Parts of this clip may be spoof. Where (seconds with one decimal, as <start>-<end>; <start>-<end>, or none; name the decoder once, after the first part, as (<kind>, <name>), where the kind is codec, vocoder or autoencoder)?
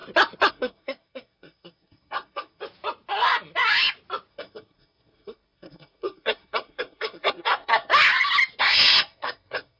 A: 0.5-2.6 (codec, SNAC); 4.3-7.9; 8.6-9.8